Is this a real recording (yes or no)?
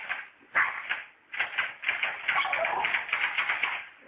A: yes